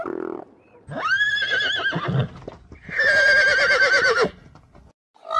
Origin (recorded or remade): recorded